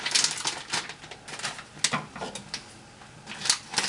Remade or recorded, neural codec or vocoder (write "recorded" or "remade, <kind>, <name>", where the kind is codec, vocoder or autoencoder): recorded